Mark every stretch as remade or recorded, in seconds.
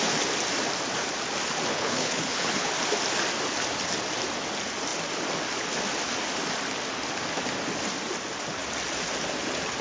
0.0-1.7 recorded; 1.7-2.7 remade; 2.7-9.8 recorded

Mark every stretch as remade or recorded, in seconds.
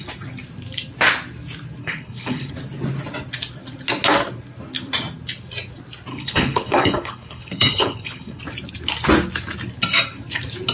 0.0-1.8 recorded; 1.8-2.5 remade; 2.5-6.1 recorded; 6.1-8.4 remade; 8.4-10.7 recorded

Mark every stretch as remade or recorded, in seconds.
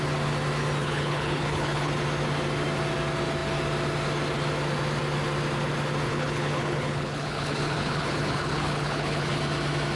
0.0-0.8 recorded; 0.8-1.9 remade; 1.9-6.1 recorded; 6.1-9.4 remade; 9.4-10.0 recorded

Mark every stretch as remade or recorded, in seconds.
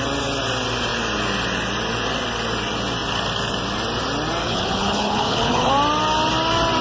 0.0-4.4 recorded; 4.4-5.7 remade; 5.7-6.8 recorded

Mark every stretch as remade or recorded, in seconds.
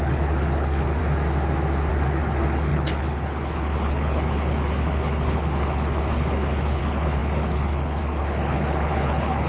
0.0-1.0 remade; 1.0-1.9 recorded; 1.9-9.5 remade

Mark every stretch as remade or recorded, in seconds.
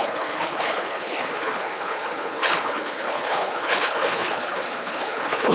0.0-5.5 remade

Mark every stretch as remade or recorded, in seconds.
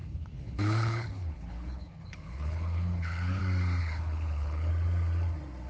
0.0-3.4 remade; 3.4-3.8 recorded; 3.8-4.7 remade; 4.7-5.7 recorded